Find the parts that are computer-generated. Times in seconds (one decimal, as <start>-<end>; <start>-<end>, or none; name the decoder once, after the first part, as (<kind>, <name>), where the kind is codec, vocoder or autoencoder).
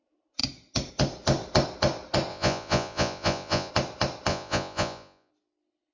2.3-3.7 (vocoder, Vocos); 4.3-5.3